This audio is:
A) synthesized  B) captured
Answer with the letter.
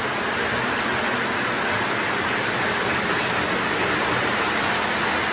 B